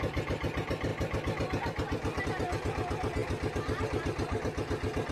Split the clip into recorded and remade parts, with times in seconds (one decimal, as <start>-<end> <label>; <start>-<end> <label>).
0.0-3.2 recorded; 3.2-3.8 remade; 3.8-5.1 recorded